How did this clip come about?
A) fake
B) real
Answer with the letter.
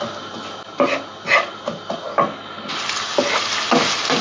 B